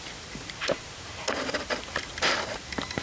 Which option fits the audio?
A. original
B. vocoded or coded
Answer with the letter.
B